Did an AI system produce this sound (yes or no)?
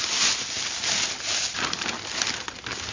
no